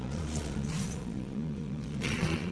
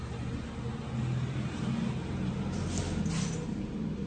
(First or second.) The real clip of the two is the second